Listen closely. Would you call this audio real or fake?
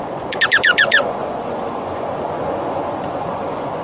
fake